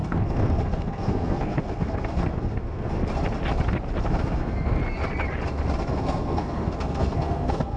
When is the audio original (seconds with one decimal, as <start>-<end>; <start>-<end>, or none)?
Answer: 3.0-4.1; 4.8-5.9